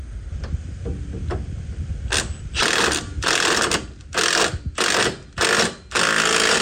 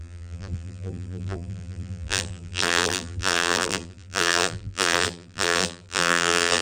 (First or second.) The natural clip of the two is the first